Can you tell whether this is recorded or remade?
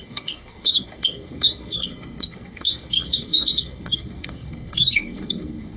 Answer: remade